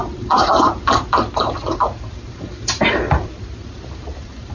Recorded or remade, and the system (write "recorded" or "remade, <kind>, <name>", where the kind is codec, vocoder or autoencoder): remade, vocoder, BigVGAN v2